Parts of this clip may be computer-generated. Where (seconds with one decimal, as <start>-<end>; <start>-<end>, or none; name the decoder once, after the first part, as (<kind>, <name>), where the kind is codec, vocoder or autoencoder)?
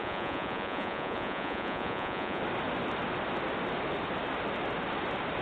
0.0-2.4 (vocoder, Vocos)